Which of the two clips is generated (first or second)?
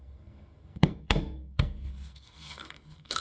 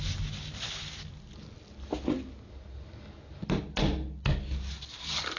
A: first